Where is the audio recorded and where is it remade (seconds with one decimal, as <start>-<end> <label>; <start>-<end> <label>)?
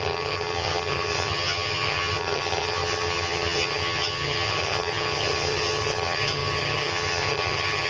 0.0-7.9 remade